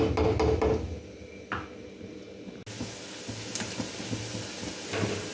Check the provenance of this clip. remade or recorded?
recorded